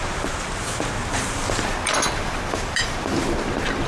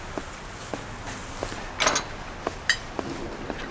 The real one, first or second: second